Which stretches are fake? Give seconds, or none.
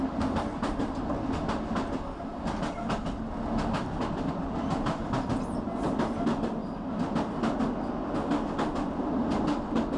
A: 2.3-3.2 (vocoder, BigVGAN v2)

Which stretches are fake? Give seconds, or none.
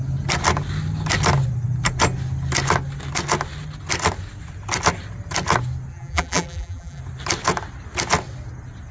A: 5.9-7.0 (vocoder, BigVGAN v2)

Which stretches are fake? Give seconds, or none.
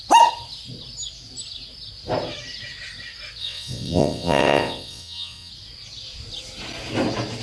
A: 3.4-5.5 (vocoder, WaveNeXt)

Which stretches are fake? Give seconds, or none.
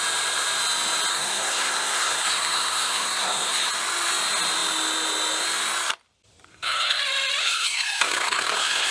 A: 1.1-3.7 (codec, SNAC); 6.5-7.0; 7.4-8.9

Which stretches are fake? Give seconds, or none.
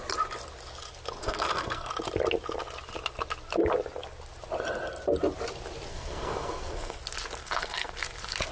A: 1.2-1.9 (codec, SNAC); 5.9-6.9; 7.4-7.9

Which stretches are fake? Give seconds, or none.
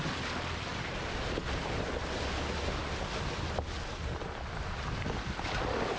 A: none